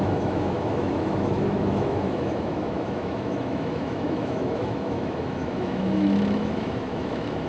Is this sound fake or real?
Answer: fake